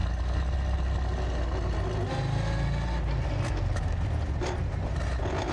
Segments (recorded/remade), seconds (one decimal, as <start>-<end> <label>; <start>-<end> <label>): 0.0-5.5 recorded